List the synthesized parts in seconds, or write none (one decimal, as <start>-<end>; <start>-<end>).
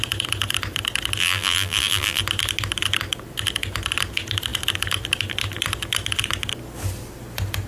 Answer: 1.2-2.2